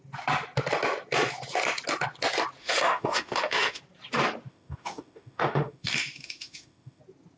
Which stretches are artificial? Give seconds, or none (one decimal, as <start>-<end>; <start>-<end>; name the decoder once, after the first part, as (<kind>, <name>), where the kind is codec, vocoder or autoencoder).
2.6-3.8 (autoencoder, DAC-VAE); 4.5-7.0